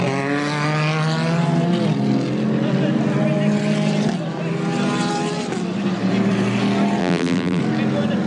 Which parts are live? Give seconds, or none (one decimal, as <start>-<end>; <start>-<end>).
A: 0.0-7.0; 7.6-8.3